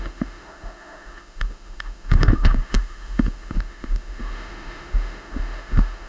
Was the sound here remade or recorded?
remade